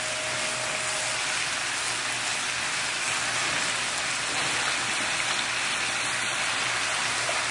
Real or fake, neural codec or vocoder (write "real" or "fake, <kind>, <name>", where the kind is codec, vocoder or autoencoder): real